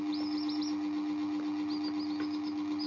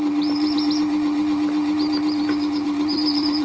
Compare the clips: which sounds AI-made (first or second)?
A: second